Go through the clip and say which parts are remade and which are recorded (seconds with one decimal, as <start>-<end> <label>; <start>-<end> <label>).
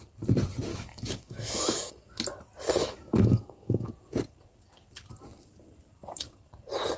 0.0-0.7 recorded; 0.7-1.9 remade; 1.9-2.8 recorded; 2.8-3.9 remade; 3.9-7.0 recorded